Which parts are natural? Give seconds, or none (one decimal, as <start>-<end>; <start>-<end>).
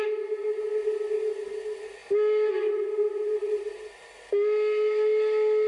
0.0-5.7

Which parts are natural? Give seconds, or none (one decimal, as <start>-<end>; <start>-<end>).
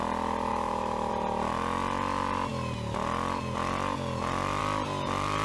0.0-0.5; 1.1-5.4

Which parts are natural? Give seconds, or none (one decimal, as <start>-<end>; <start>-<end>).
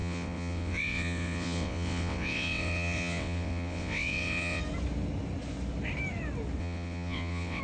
4.6-6.6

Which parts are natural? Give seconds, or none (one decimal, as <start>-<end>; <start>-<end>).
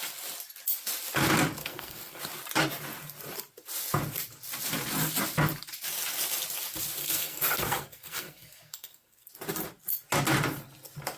0.0-1.6; 2.2-7.0; 9.3-11.2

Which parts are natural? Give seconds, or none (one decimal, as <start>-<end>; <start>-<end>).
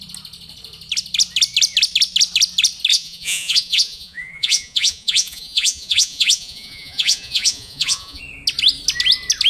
0.0-2.9; 8.2-9.5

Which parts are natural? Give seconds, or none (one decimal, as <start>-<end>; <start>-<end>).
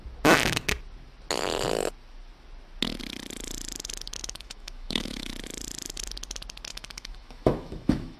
0.0-4.2; 5.3-6.7